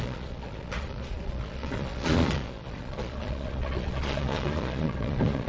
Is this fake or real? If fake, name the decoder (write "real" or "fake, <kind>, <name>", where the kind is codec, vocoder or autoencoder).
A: fake, vocoder, Vocos